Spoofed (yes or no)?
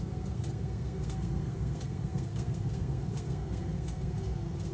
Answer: yes